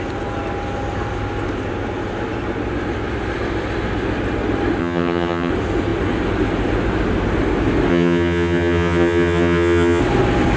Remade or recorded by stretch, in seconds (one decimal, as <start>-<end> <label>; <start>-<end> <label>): 0.0-4.8 recorded; 4.8-5.5 remade; 5.5-7.9 recorded; 7.9-10.0 remade; 10.0-10.6 recorded